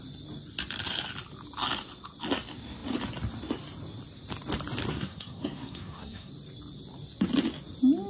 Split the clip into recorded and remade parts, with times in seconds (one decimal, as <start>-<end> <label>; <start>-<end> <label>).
0.0-4.9 recorded; 4.9-6.3 remade; 6.3-8.1 recorded